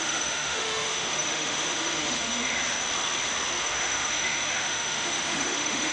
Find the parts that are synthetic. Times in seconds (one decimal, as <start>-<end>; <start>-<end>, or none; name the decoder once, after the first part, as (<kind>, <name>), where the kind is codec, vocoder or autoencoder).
0.0-2.6 (autoencoder, DAC-VAE); 3.6-5.9